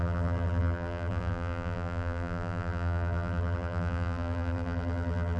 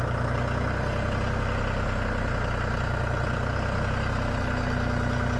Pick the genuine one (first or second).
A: second